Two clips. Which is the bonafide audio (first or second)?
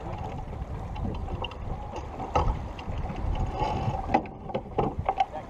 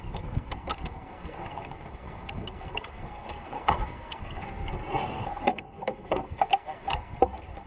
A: first